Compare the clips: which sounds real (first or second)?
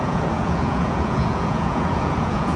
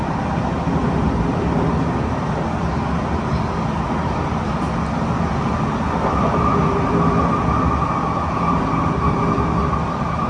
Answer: second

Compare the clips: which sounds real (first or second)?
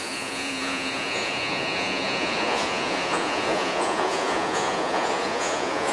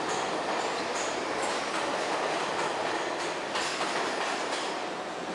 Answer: second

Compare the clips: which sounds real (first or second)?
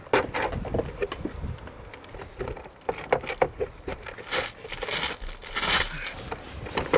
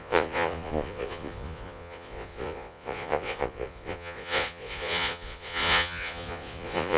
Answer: first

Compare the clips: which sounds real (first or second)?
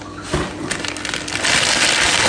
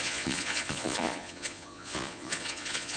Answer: first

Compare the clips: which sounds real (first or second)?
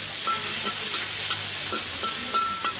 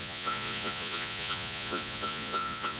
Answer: first